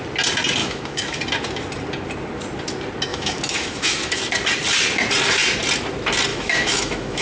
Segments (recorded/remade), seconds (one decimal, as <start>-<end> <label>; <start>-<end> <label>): 0.0-0.6 recorded; 0.6-1.2 remade; 1.2-3.1 recorded; 3.1-4.2 remade; 4.2-6.3 recorded; 6.3-7.2 remade